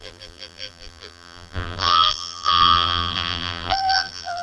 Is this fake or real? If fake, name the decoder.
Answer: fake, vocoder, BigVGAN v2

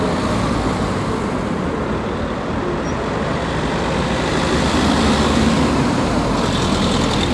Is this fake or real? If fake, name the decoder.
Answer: fake, vocoder, BigVGAN v2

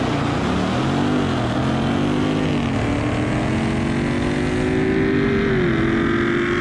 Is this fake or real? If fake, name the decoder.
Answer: real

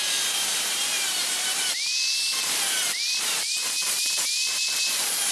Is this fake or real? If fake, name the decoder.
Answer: fake, vocoder, BigVGAN v2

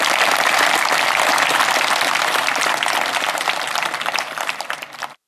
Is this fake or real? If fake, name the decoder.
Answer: fake, vocoder, BigVGAN v2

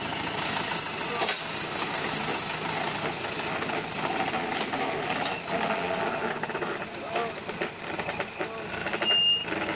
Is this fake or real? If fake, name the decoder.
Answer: real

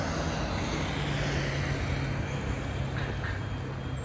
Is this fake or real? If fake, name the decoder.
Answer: real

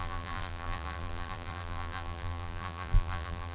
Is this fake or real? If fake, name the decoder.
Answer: fake, vocoder, BigVGAN v2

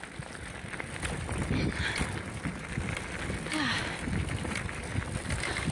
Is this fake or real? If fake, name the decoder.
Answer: real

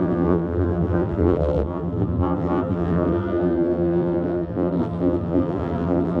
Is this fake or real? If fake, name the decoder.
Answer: fake, vocoder, BigVGAN v2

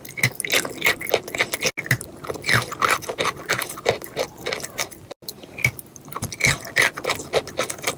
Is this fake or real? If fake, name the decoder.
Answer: real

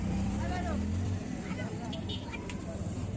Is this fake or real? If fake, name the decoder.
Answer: fake, vocoder, BigVGAN v2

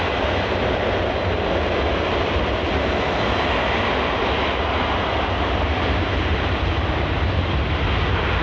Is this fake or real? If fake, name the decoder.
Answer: real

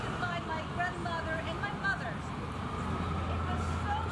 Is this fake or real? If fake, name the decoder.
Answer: real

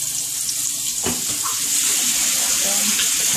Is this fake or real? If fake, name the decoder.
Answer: real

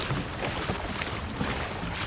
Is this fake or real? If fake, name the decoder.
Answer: fake, vocoder, BigVGAN v2